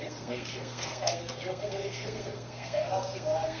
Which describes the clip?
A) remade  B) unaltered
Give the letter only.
A